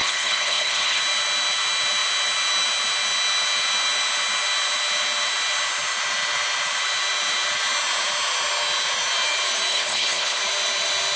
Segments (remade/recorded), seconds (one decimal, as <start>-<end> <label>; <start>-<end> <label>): 0.0-1.0 remade; 1.0-9.7 recorded; 9.7-10.4 remade; 10.4-11.2 recorded